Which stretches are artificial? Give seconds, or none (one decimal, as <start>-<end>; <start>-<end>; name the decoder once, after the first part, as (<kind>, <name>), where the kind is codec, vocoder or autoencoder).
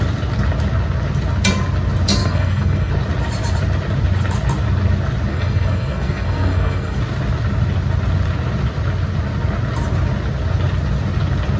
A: 2.2-2.9 (codec, SNAC); 5.3-7.0